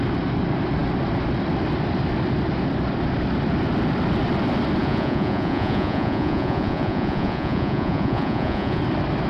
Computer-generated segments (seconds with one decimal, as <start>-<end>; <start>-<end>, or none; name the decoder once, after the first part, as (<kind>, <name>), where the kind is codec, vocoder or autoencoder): 4.8-8.8 (vocoder, Vocos)